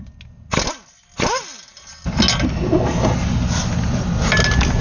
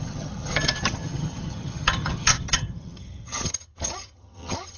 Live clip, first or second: first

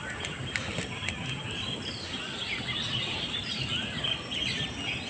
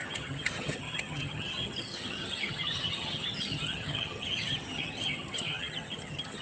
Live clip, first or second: first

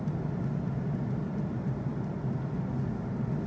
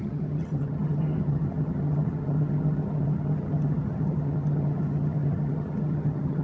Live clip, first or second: first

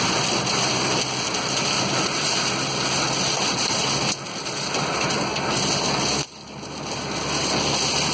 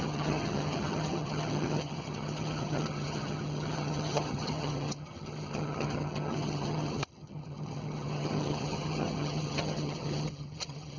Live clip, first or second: first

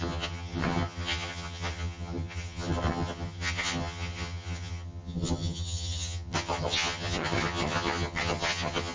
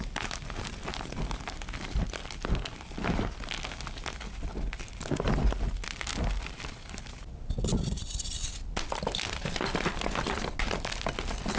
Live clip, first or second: second